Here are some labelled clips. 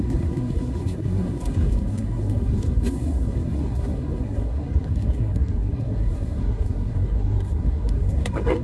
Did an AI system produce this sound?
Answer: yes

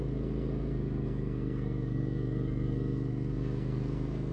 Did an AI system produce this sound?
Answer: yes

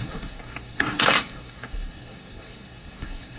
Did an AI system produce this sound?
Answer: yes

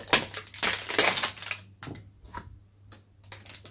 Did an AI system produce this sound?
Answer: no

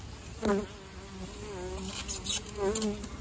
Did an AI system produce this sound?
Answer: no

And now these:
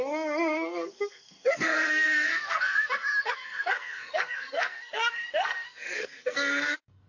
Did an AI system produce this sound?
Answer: yes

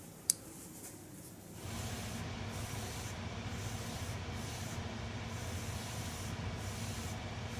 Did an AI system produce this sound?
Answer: no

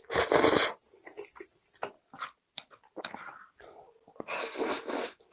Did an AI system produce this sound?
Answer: no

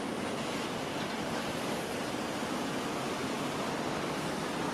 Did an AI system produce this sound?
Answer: no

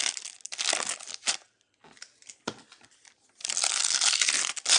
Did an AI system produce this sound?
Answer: no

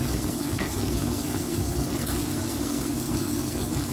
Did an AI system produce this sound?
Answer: yes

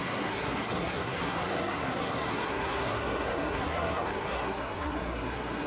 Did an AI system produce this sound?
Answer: yes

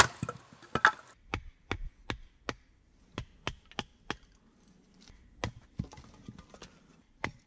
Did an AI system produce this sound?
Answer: no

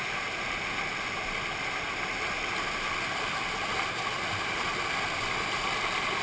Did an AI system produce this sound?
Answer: no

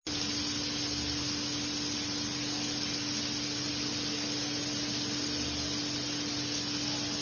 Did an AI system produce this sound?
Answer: no